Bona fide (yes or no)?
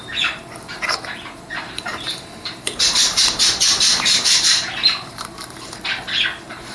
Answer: no